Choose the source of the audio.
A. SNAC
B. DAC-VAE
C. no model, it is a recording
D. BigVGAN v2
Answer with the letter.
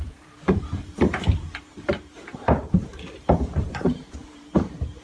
D